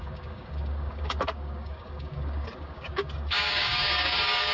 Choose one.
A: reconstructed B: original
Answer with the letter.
A